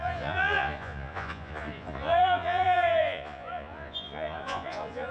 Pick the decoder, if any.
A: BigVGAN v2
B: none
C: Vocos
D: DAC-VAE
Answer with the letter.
C